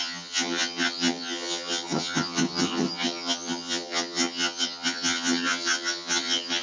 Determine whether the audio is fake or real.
fake